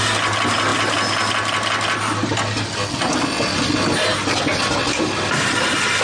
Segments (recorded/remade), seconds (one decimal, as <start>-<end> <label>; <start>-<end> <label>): 0.0-6.0 recorded